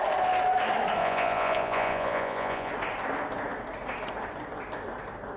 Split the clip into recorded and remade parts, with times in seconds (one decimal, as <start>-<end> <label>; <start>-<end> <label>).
0.0-1.0 recorded; 1.0-2.7 remade; 2.7-5.4 recorded